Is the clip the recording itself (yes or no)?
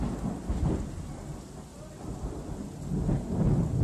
yes